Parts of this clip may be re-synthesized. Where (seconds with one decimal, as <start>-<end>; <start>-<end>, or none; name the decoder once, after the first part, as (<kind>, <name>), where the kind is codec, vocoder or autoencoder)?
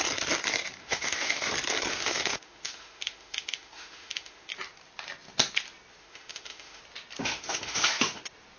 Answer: 0.8-1.5 (autoencoder, DAC-VAE); 1.9-4.5; 6.0-6.8; 7.2-8.2